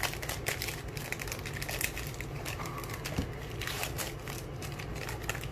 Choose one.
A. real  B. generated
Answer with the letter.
A